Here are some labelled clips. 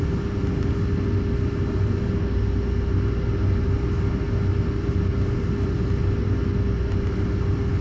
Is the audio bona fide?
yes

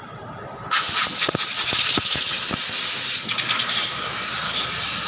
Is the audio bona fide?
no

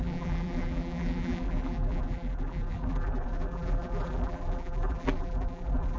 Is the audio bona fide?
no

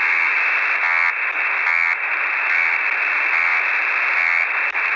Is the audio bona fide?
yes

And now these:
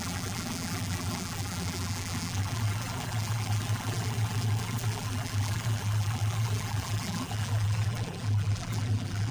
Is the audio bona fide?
no